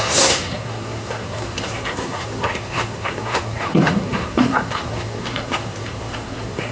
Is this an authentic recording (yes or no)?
no